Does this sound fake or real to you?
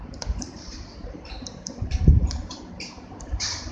fake